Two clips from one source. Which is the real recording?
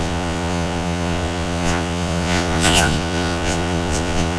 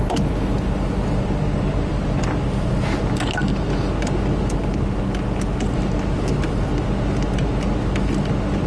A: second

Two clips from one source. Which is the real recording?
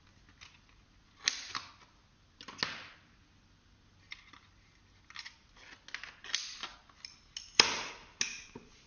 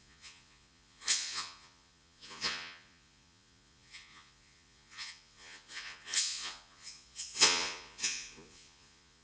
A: first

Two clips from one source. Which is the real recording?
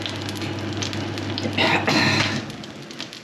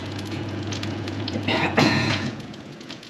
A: first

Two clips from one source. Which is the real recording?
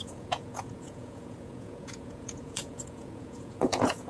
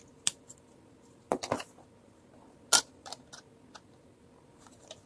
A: second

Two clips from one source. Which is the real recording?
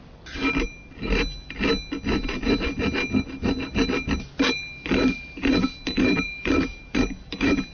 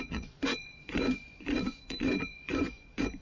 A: first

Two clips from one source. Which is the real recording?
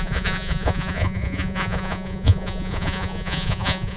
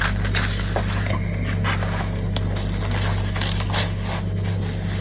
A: second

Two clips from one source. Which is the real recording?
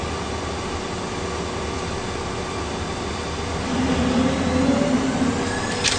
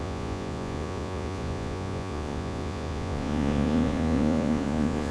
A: first